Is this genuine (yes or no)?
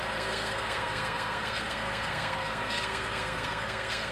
no